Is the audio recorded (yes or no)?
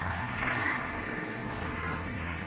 no